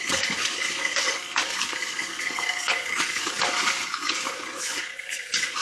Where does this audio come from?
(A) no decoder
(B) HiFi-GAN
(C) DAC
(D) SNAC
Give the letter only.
C